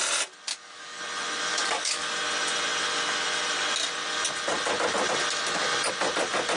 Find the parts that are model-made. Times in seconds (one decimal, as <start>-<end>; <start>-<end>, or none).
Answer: 0.5-1.0; 1.5-2.1